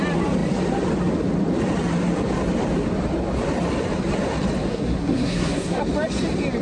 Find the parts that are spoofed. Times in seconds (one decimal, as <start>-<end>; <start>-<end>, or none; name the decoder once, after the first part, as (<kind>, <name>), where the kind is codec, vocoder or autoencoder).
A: 4.7-5.8 (codec, SNAC)